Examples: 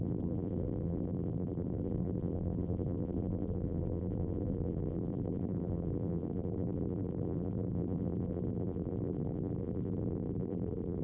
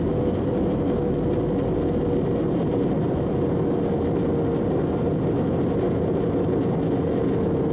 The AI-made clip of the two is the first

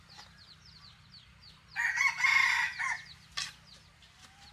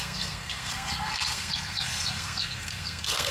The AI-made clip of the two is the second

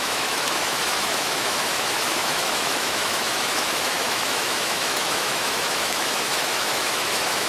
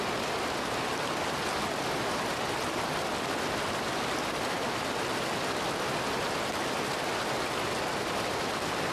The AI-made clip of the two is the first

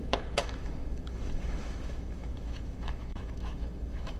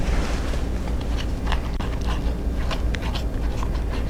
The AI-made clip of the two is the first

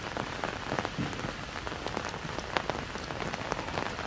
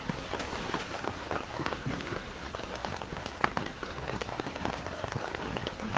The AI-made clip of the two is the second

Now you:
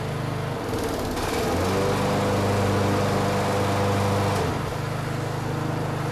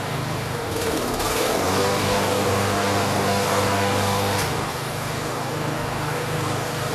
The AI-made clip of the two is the second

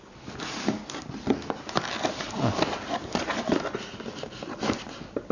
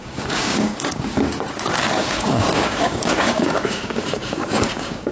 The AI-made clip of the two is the second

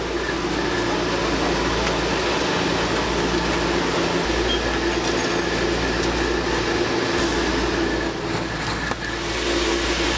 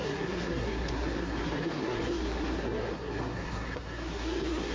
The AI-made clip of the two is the second